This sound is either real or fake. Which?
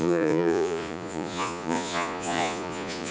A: fake